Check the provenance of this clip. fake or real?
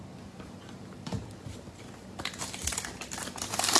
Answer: real